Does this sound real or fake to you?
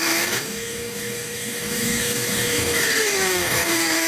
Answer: fake